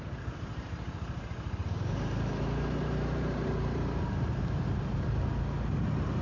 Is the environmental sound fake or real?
fake